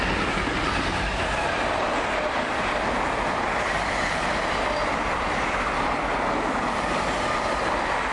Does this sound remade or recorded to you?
recorded